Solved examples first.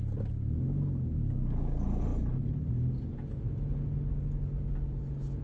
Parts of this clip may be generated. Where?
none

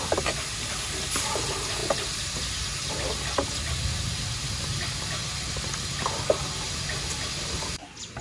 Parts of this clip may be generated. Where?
none

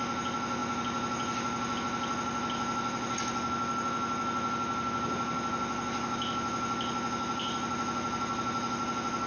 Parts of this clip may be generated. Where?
none

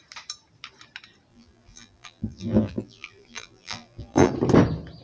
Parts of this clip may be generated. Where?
1.3-4.3